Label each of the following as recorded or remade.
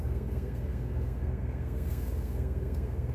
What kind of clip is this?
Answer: remade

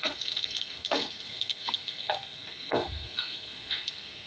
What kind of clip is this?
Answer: remade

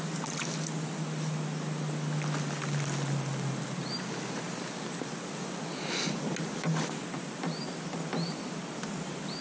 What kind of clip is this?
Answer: recorded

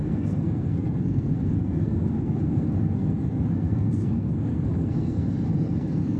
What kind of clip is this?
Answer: remade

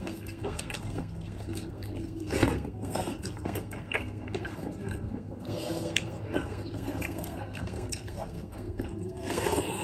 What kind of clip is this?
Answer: remade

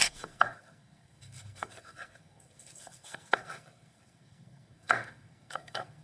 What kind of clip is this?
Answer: remade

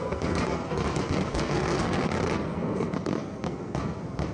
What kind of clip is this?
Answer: remade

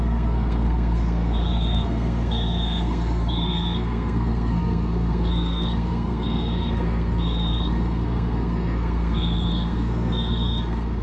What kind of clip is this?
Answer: remade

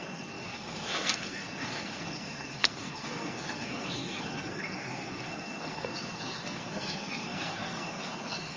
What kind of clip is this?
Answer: remade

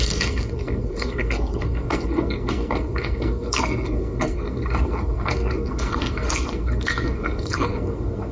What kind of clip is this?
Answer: remade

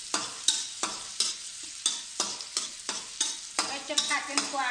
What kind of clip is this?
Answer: recorded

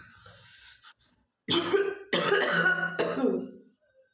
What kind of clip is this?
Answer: recorded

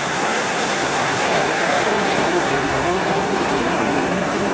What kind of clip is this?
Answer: remade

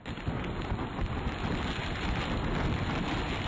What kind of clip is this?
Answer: recorded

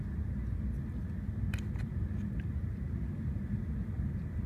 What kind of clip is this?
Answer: recorded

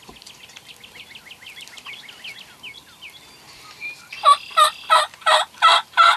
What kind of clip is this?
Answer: recorded